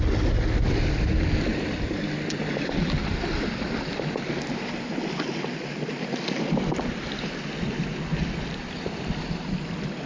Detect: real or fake real